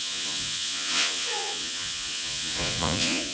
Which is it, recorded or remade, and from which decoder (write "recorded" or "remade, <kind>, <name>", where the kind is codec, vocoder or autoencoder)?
remade, vocoder, Vocos